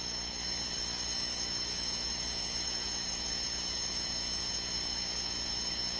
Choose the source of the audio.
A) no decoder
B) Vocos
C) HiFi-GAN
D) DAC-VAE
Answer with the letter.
D